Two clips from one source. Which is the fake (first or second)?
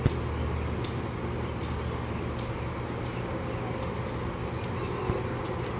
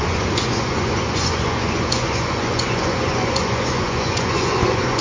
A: second